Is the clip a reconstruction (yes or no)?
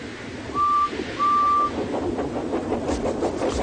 no